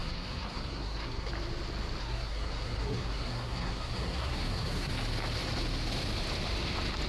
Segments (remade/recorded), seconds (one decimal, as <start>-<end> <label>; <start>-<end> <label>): 0.0-1.3 remade; 1.3-2.0 recorded; 2.0-4.9 remade; 4.9-7.1 recorded